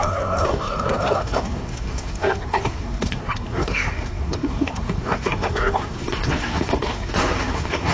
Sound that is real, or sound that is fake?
fake